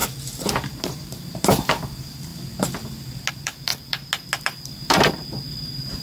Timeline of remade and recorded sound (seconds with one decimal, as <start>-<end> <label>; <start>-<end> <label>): 0.0-0.8 recorded; 0.8-2.3 remade; 2.3-3.3 recorded; 3.3-3.7 remade; 3.7-4.4 recorded; 4.4-6.0 remade